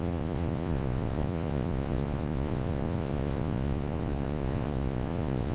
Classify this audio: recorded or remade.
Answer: remade